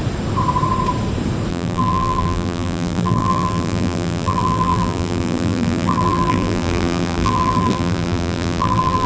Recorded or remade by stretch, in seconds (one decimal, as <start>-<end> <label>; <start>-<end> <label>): 0.0-1.5 recorded; 1.5-9.1 remade